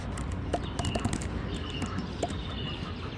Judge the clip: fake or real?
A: real